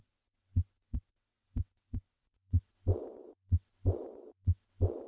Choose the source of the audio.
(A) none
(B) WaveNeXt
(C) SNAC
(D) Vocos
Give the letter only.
B